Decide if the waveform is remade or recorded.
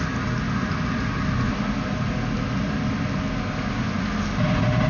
recorded